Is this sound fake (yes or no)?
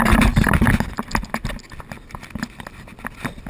no